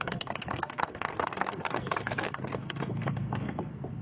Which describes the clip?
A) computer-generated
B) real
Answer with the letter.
A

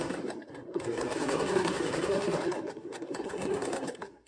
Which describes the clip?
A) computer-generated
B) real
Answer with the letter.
A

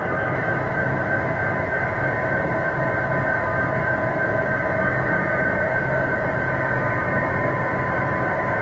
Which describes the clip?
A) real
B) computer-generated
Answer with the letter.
A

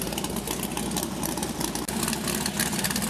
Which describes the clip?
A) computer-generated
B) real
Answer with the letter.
B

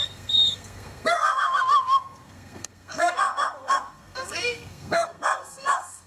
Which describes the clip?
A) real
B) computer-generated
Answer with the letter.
B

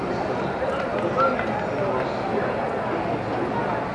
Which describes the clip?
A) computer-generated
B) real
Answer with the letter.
B